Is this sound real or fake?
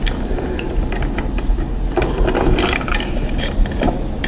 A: real